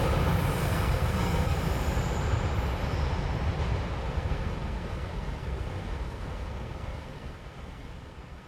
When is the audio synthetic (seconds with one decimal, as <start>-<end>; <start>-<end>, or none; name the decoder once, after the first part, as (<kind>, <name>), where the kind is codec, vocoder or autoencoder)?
0.6-1.6 (codec, SNAC); 4.0-8.5